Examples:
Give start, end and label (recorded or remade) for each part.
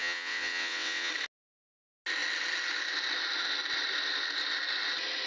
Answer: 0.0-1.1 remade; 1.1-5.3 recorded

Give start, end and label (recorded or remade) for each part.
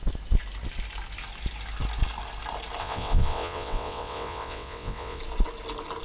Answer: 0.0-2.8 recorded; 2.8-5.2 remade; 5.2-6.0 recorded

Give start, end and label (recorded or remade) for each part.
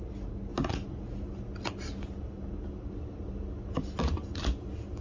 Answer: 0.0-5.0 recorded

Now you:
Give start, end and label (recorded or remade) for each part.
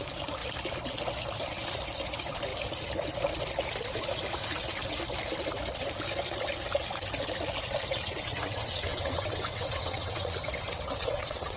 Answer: 0.0-7.9 recorded; 7.9-11.6 remade